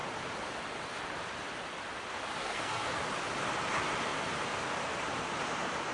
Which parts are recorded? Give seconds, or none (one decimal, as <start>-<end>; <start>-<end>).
0.0-2.4; 3.0-5.9